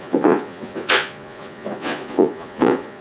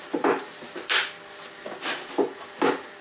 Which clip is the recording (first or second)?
second